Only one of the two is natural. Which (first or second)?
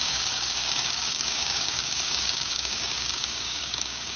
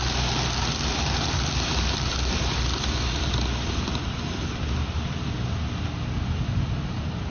second